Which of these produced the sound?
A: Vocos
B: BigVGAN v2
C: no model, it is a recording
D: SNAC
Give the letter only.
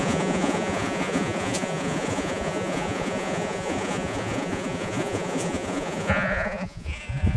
A